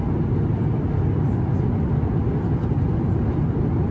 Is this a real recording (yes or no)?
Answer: yes